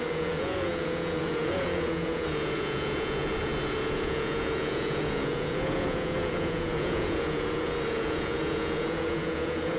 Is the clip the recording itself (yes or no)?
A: no